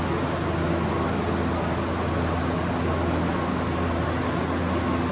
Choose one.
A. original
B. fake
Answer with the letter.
A